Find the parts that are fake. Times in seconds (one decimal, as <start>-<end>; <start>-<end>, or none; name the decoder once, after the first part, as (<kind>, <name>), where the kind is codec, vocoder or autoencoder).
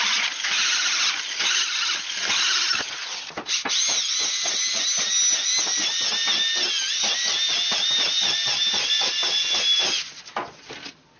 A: none